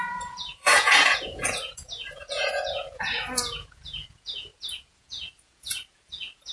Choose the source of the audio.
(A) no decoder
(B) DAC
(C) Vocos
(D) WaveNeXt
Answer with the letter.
C